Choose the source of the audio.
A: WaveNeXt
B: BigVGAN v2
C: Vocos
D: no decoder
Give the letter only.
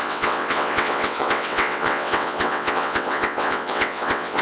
A